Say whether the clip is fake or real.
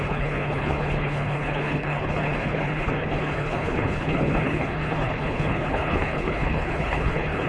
fake